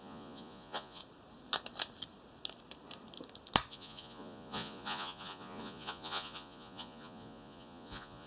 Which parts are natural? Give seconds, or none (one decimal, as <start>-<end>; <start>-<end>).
1.0-3.7